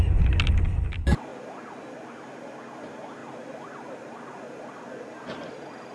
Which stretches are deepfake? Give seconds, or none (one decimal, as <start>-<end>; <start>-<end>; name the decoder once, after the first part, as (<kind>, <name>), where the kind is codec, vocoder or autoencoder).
none